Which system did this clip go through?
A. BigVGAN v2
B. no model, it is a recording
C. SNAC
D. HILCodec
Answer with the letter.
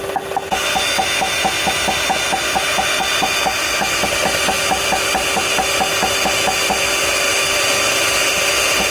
B